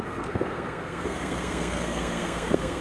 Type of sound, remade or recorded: remade